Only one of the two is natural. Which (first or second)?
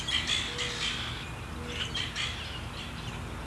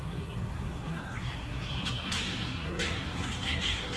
first